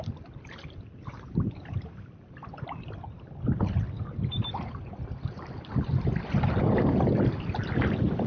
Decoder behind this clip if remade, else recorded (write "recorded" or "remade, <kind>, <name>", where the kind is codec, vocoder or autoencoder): recorded